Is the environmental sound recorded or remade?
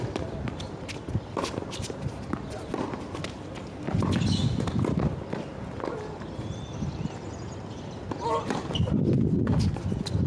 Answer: recorded